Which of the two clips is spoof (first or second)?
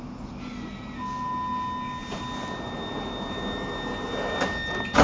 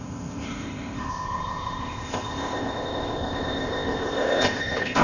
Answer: second